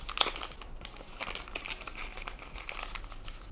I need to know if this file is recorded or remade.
recorded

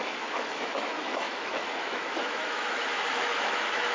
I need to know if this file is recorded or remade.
remade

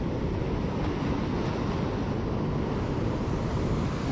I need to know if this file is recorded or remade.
recorded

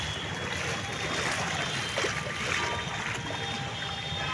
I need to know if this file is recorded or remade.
recorded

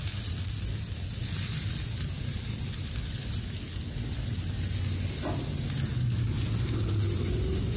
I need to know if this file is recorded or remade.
recorded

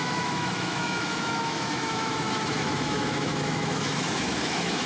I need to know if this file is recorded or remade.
remade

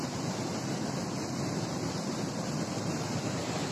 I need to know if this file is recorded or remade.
recorded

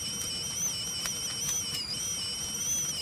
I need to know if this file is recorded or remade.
recorded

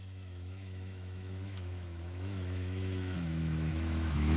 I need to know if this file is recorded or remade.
remade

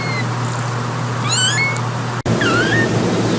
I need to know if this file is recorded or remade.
recorded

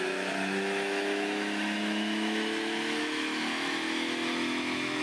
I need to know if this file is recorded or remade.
remade